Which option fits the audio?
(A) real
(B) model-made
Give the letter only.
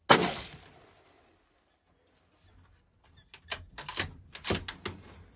A